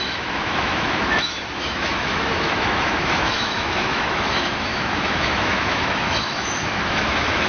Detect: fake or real fake